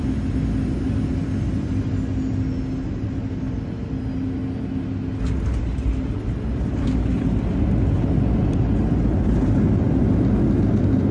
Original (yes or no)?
yes